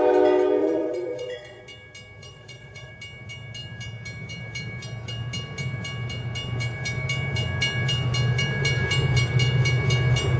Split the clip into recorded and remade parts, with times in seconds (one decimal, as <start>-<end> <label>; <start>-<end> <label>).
0.0-0.6 recorded; 0.6-1.6 remade; 1.6-2.2 recorded; 2.2-2.9 remade; 2.9-10.4 recorded